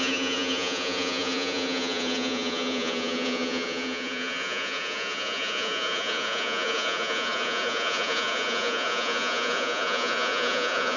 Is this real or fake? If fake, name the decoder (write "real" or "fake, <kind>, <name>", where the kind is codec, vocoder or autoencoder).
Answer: fake, vocoder, Vocos